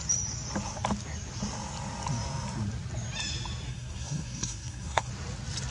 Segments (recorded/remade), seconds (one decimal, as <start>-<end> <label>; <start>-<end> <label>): 0.0-3.7 recorded; 3.7-5.1 remade; 5.1-5.7 recorded